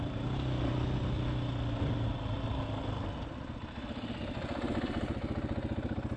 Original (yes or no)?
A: yes